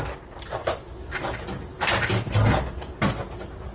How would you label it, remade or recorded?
recorded